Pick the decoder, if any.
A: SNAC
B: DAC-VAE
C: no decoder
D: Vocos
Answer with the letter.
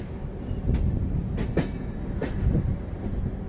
C